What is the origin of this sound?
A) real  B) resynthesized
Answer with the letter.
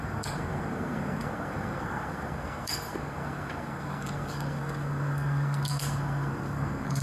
B